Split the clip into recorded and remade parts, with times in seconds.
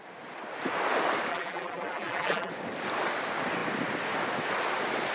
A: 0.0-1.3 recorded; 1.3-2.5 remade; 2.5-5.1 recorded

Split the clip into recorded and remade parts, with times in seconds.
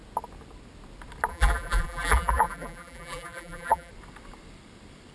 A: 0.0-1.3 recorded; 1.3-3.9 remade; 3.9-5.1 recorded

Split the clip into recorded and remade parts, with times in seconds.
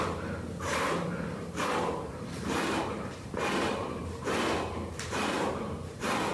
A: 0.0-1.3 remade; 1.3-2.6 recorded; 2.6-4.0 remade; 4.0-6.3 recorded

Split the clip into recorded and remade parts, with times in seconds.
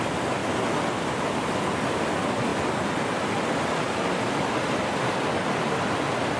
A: 0.0-6.4 recorded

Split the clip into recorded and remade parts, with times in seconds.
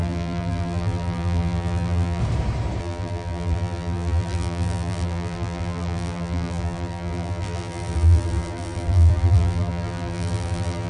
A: 0.0-2.2 remade; 2.2-2.8 recorded; 2.8-10.9 remade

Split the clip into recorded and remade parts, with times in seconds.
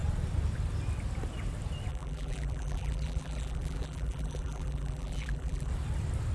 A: 0.0-1.9 recorded; 1.9-5.7 remade; 5.7-6.3 recorded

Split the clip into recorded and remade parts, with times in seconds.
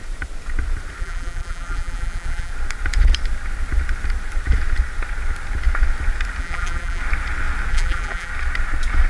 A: 0.0-1.0 recorded; 1.0-2.5 remade; 2.5-6.4 recorded; 6.4-7.0 remade; 7.0-7.7 recorded; 7.7-8.3 remade; 8.3-9.1 recorded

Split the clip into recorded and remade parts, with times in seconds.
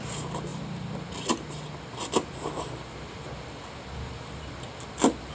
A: 0.0-5.3 recorded